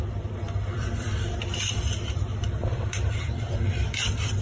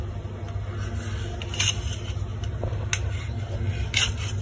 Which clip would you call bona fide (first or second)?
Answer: second